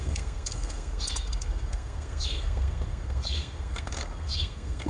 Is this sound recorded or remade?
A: remade